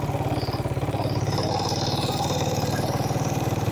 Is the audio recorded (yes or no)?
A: no